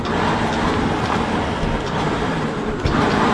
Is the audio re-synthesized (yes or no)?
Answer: no